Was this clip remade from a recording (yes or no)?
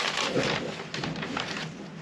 no